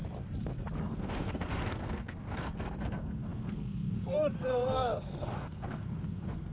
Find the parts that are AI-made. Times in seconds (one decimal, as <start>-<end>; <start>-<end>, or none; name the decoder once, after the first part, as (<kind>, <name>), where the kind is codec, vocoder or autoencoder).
0.8-6.5 (codec, SNAC)